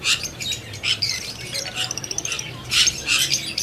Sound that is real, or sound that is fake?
fake